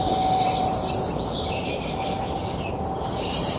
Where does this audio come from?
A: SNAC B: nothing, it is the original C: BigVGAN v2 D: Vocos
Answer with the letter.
B